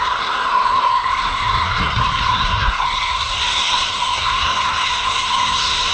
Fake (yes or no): yes